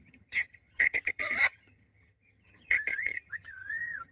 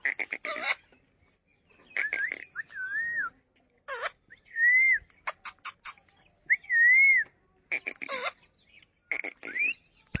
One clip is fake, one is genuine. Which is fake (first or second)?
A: first